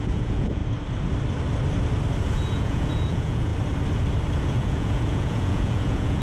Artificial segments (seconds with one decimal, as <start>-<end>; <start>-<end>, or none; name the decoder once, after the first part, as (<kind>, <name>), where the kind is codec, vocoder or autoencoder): 0.0-0.6 (vocoder, Vocos); 2.3-3.5; 4.4-6.2

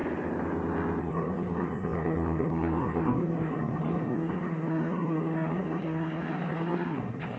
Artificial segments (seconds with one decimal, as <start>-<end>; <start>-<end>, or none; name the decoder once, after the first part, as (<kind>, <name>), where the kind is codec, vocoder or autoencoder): 1.0-7.4 (codec, SNAC)

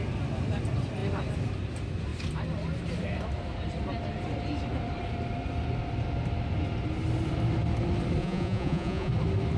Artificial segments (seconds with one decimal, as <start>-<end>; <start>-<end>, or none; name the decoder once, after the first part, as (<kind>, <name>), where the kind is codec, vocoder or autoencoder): 8.2-9.1 (vocoder, Vocos)